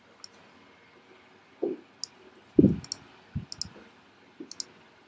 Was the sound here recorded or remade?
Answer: recorded